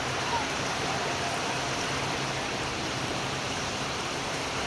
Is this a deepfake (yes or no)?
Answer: yes